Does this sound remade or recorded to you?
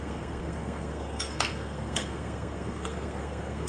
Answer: remade